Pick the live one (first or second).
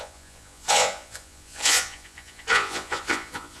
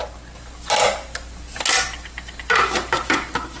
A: second